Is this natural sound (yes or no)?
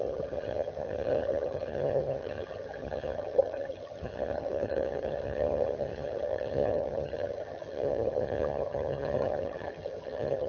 no